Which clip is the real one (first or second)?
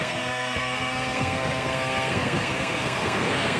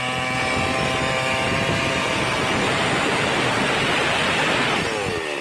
second